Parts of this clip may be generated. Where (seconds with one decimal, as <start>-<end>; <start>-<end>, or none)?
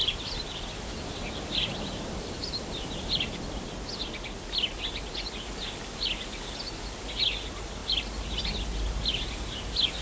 0.0-2.9